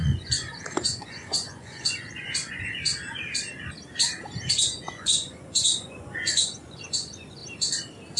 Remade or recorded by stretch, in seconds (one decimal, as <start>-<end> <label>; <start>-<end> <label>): 0.0-2.9 remade; 2.9-4.5 recorded; 4.5-7.4 remade; 7.4-8.2 recorded